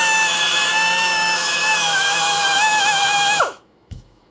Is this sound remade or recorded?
remade